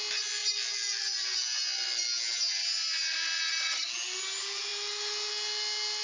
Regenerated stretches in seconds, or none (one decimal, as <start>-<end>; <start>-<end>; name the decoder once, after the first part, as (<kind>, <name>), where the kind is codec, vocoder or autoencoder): none